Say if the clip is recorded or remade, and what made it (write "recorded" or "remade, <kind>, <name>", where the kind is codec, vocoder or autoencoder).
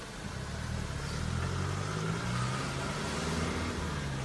recorded